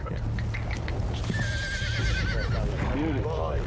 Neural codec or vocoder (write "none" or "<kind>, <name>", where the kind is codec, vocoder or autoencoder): none